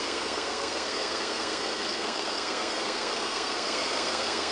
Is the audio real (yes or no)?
no